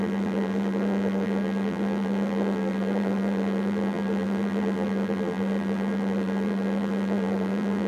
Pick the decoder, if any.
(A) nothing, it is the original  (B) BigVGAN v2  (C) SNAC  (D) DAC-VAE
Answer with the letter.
B